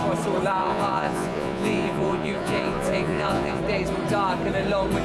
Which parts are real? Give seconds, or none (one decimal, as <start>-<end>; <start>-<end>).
0.0-0.6; 3.6-5.0